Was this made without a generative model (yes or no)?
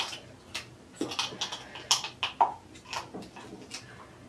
yes